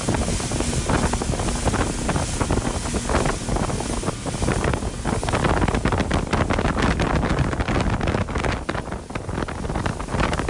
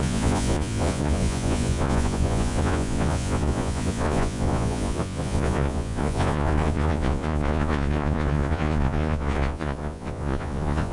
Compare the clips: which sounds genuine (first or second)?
first